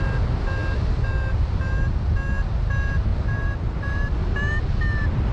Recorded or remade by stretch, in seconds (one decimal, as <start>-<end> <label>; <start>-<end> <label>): 0.0-3.1 recorded; 3.1-4.8 remade; 4.8-5.3 recorded